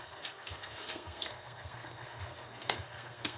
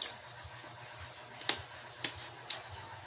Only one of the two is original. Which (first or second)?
second